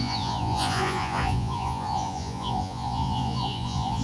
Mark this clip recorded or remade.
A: remade